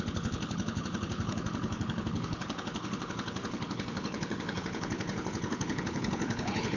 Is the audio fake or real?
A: fake